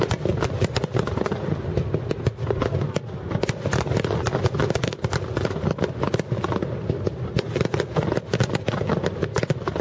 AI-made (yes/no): no